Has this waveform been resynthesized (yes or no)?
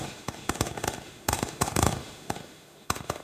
yes